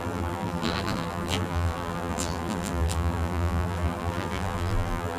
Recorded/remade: remade